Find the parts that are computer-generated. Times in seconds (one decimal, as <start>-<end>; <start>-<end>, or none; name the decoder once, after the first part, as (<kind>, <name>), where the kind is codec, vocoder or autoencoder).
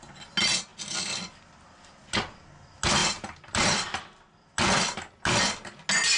3.0-4.0 (vocoder, BigVGAN v2)